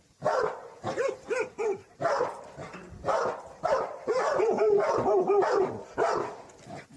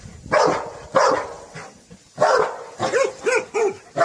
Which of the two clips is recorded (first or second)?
second